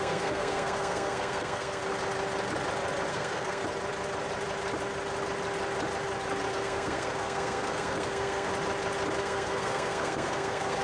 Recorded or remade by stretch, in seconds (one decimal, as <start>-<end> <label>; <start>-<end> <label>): 0.0-1.8 remade; 1.8-3.1 recorded; 3.1-3.6 remade; 3.6-6.5 recorded; 6.5-8.5 remade; 8.5-9.2 recorded; 9.2-10.8 remade